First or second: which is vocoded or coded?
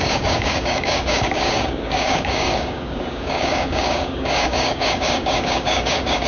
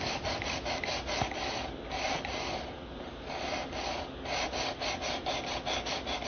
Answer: first